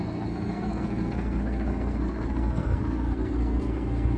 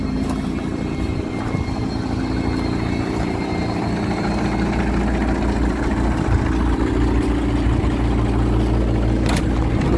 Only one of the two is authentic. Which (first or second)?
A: second